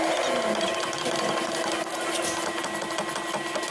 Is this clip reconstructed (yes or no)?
no